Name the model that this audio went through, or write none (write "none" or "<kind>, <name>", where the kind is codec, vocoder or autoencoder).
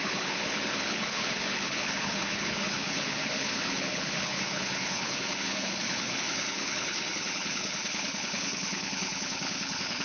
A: codec, HILCodec